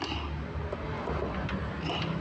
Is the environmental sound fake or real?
real